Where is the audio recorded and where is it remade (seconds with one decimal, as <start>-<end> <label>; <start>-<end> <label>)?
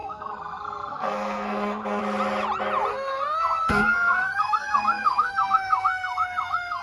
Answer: 0.0-2.0 remade; 2.0-2.9 recorded; 2.9-6.8 remade